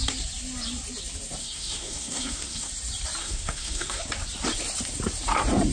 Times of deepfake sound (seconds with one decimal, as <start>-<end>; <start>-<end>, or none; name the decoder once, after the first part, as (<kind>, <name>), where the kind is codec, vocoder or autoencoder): 1.4-2.7 (codec, SNAC); 3.2-4.0